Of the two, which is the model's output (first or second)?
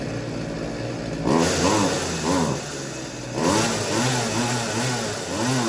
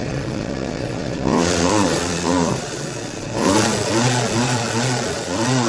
second